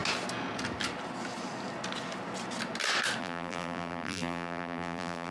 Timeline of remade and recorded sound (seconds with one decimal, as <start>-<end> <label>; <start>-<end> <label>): 0.0-3.2 recorded; 3.2-5.3 remade